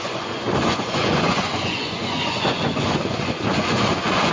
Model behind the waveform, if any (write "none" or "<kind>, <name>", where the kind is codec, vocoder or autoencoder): vocoder, Vocos